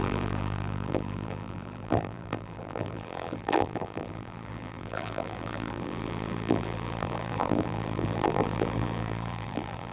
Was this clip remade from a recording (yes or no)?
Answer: yes